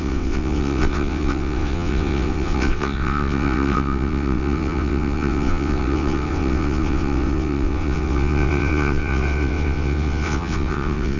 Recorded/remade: remade